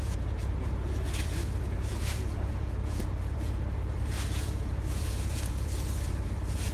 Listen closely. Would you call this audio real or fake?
fake